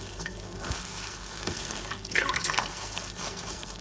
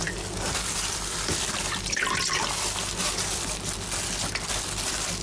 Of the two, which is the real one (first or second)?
second